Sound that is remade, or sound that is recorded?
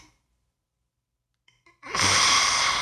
remade